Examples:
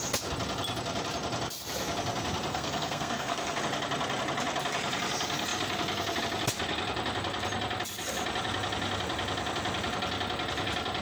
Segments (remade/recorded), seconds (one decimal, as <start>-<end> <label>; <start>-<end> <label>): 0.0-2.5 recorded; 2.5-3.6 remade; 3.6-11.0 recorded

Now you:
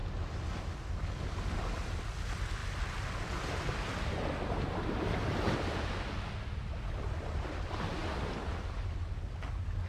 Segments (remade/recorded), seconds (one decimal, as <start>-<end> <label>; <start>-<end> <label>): 0.0-9.9 recorded

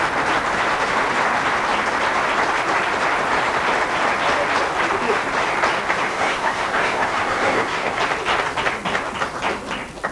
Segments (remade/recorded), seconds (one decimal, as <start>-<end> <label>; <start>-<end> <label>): 0.0-6.1 recorded; 6.1-8.0 remade; 8.0-10.1 recorded